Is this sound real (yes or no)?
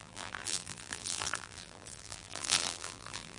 no